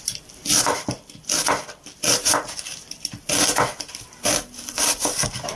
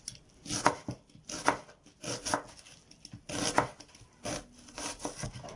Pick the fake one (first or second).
first